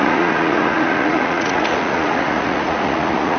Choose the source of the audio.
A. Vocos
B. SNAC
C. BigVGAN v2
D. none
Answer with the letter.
A